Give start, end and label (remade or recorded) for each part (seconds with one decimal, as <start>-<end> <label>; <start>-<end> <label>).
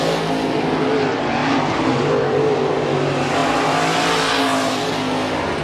0.0-5.6 recorded